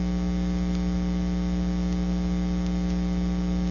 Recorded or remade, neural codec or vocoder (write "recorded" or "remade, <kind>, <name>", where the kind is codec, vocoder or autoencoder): recorded